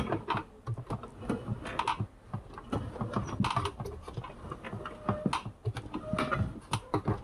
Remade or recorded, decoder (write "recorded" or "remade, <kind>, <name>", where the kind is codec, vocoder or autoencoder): recorded